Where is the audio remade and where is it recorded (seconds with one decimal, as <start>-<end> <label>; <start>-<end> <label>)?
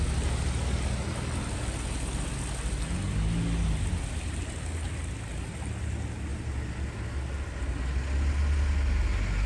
0.0-9.5 recorded